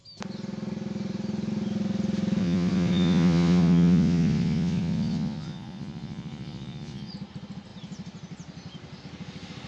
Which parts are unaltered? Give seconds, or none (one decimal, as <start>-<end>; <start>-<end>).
0.0-2.4; 7.1-9.7